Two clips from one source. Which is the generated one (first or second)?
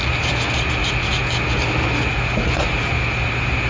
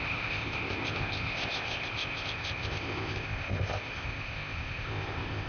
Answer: second